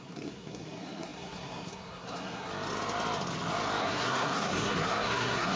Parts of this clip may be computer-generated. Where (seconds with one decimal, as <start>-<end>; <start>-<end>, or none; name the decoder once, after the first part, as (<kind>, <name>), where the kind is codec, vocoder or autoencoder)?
0.0-2.5 (codec, SNAC); 3.8-5.6